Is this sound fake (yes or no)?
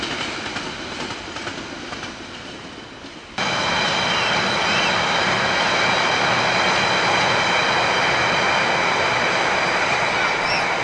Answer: no